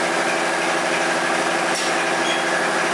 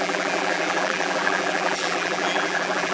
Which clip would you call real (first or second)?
first